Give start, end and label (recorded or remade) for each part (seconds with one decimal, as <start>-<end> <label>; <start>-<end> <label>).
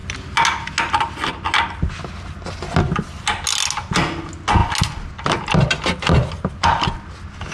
0.0-7.5 recorded